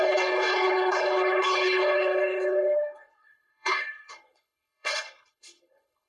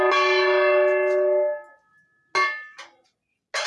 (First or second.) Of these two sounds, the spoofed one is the first